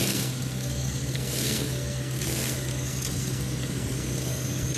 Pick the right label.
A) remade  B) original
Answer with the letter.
A